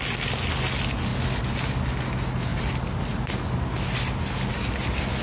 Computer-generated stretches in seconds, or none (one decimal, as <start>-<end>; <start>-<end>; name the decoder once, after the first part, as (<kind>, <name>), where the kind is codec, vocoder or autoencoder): none